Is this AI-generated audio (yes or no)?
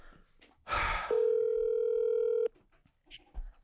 no